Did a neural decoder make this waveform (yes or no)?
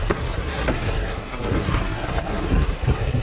yes